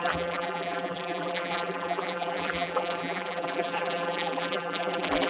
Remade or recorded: remade